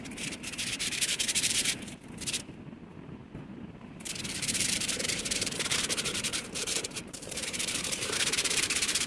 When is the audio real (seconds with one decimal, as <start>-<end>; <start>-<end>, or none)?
none